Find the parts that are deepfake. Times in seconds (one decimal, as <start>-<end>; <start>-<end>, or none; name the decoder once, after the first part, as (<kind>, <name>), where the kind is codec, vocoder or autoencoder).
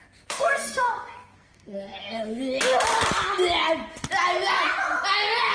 0.0-2.4 (codec, SNAC)